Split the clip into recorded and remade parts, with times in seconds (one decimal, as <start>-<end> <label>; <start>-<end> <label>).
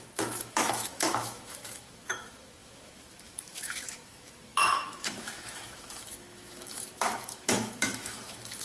0.0-8.6 remade